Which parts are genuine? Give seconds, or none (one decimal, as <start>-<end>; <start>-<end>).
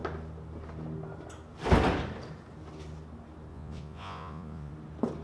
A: 0.0-3.5; 4.7-5.2